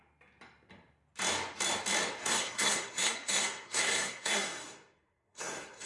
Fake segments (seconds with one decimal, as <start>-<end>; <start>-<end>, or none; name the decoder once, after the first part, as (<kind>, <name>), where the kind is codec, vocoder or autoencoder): 2.2-5.9 (codec, SNAC)